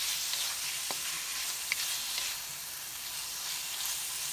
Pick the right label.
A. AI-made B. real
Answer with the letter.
B